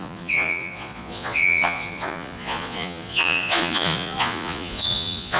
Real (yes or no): no